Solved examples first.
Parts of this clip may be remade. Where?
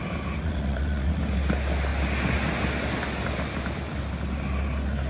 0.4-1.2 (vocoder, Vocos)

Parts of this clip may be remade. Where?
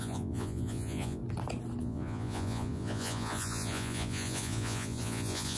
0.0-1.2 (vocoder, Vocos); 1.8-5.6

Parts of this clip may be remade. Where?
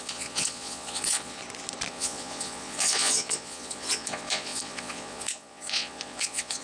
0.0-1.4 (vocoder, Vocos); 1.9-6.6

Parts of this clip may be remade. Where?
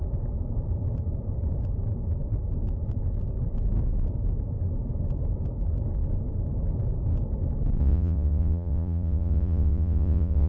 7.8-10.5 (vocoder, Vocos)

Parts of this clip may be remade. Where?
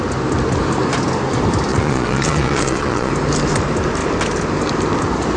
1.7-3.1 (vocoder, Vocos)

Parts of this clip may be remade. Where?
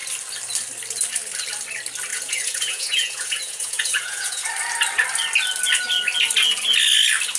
2.1-4.5 (vocoder, Vocos)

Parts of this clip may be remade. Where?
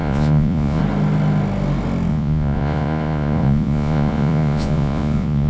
0.0-0.8 (vocoder, Vocos); 2.1-5.5